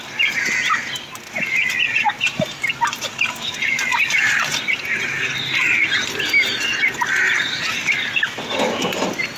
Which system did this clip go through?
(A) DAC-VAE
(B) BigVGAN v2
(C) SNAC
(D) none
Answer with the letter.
D